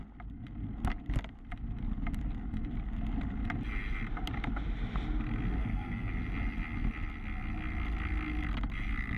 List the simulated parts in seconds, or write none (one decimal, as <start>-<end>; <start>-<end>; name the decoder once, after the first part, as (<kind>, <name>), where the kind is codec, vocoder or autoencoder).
5.6-6.1 (codec, SNAC)